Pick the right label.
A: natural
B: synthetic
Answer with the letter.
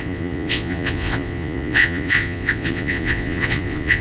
B